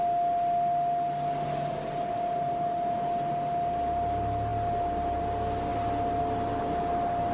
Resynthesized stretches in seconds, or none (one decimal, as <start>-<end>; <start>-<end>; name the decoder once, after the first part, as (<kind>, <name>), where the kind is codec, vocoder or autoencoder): none